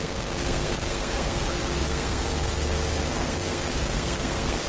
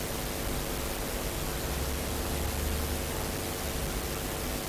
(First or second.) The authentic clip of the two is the second